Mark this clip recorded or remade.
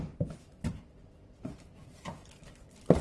recorded